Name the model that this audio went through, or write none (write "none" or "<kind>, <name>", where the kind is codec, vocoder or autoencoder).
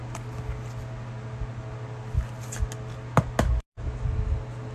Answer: none